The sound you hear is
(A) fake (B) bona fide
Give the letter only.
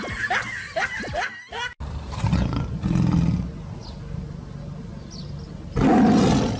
B